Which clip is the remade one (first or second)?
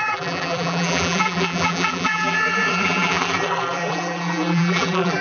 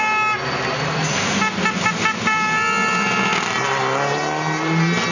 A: first